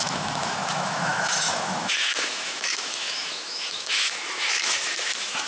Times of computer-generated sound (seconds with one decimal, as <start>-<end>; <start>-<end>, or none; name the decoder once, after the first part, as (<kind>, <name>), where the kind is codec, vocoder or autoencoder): 0.0-5.5 (autoencoder, DAC-VAE)